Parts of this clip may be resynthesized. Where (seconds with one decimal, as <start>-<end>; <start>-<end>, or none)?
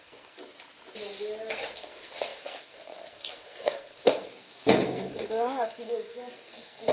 0.0-0.4; 1.5-6.9